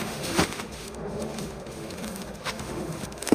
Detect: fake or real fake